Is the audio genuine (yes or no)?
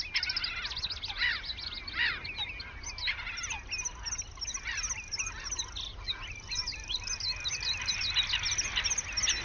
yes